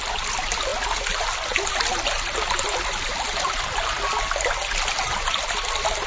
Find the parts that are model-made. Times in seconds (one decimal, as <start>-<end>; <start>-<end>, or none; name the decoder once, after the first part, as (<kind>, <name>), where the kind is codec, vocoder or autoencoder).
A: none